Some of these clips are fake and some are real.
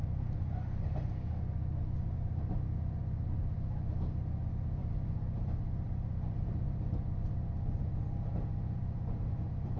real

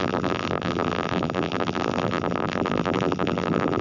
fake